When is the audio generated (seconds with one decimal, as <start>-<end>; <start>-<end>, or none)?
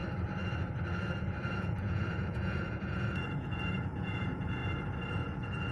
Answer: 1.5-4.6; 5.1-5.7